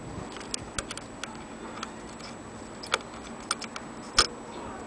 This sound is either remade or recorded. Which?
recorded